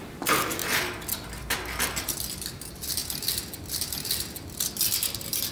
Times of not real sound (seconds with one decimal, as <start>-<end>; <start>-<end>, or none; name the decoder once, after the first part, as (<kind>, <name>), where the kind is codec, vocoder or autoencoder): none